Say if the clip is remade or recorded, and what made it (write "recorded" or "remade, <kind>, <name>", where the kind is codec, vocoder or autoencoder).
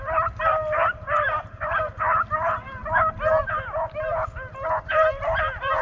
recorded